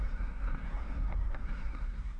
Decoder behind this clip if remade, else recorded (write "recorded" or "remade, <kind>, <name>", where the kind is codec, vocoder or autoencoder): remade, codec, SNAC